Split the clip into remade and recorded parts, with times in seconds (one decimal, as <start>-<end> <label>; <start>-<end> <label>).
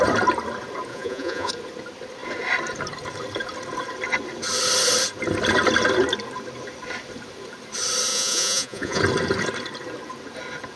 0.0-0.9 recorded; 0.9-1.5 remade; 1.5-8.1 recorded; 8.1-9.0 remade; 9.0-10.8 recorded